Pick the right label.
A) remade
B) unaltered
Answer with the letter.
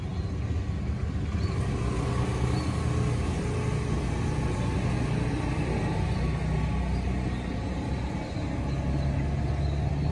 B